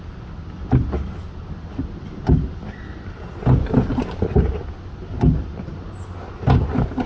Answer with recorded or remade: recorded